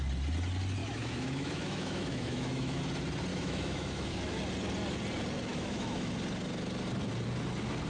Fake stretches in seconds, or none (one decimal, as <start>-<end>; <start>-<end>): 0.8-2.8; 3.3-4.4; 5.5-6.1